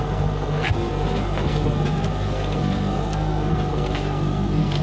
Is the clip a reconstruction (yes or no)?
yes